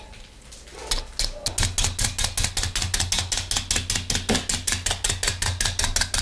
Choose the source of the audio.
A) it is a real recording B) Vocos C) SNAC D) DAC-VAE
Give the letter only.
A